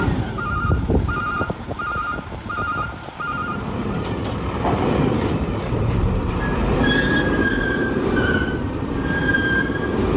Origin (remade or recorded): remade